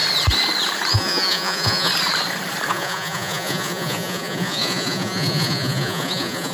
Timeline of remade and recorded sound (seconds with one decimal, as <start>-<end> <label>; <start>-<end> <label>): 0.0-0.9 recorded; 0.9-1.9 remade; 1.9-2.7 recorded; 2.7-6.5 remade